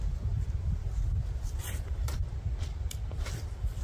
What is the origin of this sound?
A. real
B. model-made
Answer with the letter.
A